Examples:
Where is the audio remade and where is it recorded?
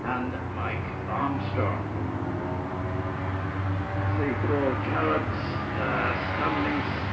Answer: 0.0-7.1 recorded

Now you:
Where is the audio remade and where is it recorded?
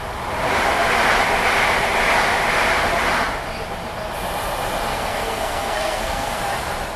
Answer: 0.0-4.9 recorded; 4.9-6.4 remade; 6.4-7.0 recorded